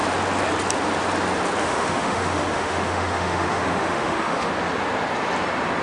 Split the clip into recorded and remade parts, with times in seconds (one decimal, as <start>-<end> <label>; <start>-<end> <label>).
0.0-1.6 recorded; 1.6-4.5 remade; 4.5-5.8 recorded